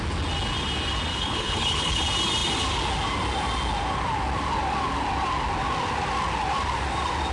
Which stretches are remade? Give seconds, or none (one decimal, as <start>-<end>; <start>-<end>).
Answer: 1.1-2.0